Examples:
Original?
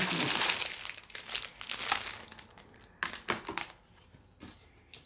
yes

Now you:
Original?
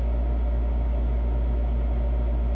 yes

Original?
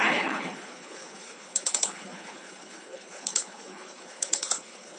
no